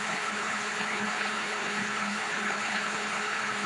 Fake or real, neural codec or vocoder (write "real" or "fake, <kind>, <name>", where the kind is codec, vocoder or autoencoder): fake, codec, HILCodec